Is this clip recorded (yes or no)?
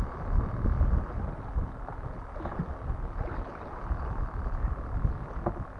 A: yes